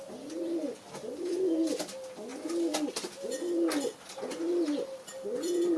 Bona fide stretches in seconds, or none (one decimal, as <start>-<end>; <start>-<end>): 0.0-5.8